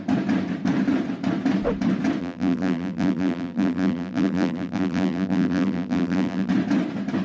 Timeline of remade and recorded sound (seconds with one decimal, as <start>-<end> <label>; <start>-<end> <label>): 0.0-2.2 recorded; 2.2-6.5 remade; 6.5-7.2 recorded